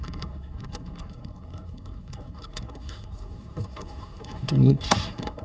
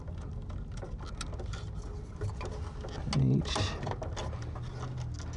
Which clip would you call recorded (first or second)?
second